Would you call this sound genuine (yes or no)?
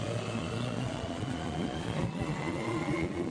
no